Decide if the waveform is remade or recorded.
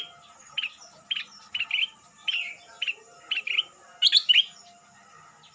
recorded